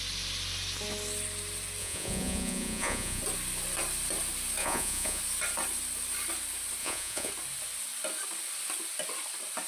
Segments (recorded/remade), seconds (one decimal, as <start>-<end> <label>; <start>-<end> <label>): 0.0-1.8 recorded; 1.8-3.2 remade; 3.2-4.6 recorded; 4.6-5.2 remade; 5.2-6.8 recorded; 6.8-7.3 remade; 7.3-9.7 recorded